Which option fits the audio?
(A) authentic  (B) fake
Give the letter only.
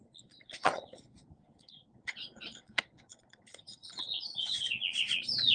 B